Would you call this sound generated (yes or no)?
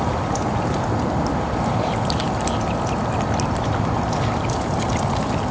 no